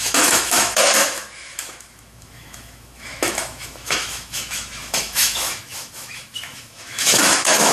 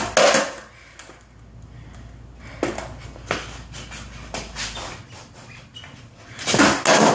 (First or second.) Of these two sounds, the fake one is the first